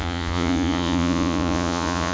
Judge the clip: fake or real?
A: fake